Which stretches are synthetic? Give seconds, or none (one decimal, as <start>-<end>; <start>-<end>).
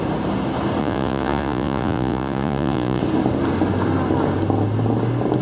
0.8-3.0